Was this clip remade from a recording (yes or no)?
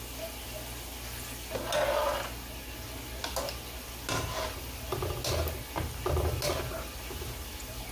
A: no